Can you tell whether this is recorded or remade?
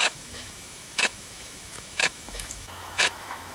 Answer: remade